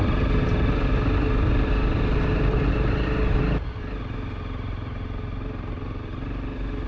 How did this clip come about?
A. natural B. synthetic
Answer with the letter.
A